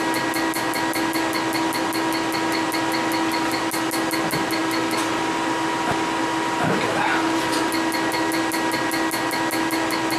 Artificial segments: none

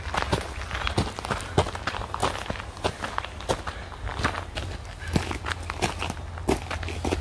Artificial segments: none

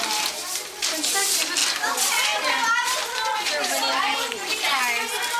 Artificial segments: none

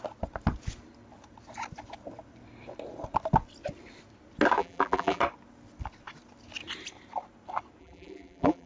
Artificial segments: 4.6-5.2 (vocoder, BigVGAN v2); 7.8-8.7

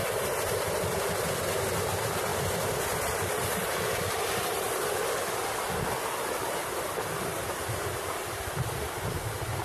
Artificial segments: 0.0-0.9 (vocoder, BigVGAN v2); 2.3-4.7

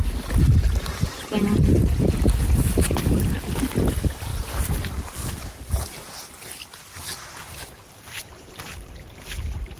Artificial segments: 4.3-5.0 (vocoder, BigVGAN v2)

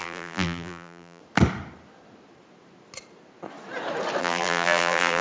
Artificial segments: 0.0-1.2 (vocoder, BigVGAN v2); 4.2-5.2

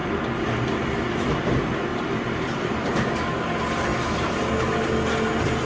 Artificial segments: 0.0-1.3 (vocoder, BigVGAN v2); 1.9-2.9; 3.9-4.5